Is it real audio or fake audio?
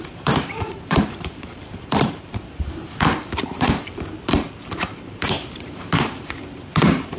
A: fake